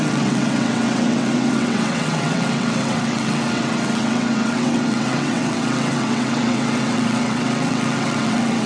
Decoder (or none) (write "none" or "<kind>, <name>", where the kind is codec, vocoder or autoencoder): vocoder, WaveNeXt